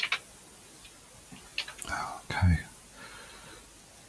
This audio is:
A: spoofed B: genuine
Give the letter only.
B